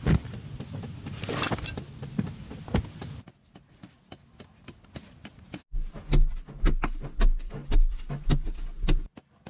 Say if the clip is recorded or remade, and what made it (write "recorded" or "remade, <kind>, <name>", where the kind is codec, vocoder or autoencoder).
recorded